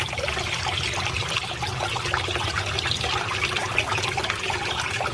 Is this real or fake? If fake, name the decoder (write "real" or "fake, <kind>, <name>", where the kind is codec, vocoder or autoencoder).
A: real